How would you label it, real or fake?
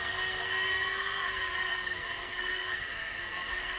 fake